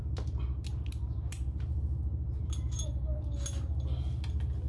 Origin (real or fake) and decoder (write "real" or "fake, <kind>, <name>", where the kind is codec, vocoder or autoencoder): real